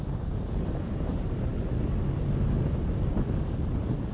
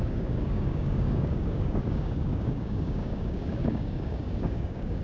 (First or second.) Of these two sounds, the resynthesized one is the second